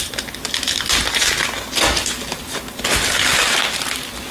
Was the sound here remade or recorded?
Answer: recorded